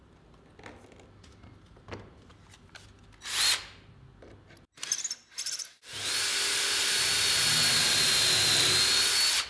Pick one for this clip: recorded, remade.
recorded